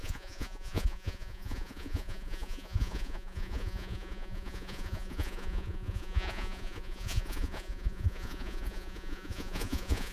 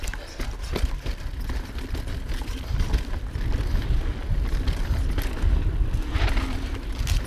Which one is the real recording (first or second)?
second